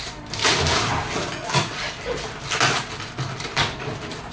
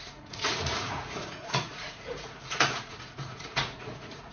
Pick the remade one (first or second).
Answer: second